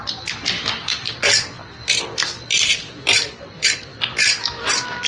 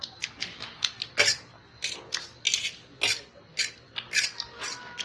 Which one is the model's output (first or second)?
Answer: first